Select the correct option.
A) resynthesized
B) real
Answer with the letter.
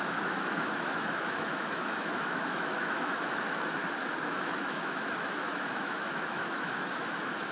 A